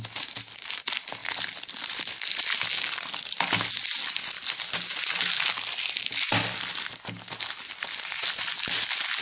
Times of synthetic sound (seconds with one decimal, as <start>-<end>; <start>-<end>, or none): none